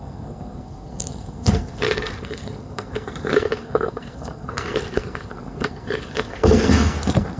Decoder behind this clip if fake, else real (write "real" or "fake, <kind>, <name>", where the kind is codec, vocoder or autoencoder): fake, codec, SNAC